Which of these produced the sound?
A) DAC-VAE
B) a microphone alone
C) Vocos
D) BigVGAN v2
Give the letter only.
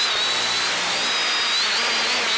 B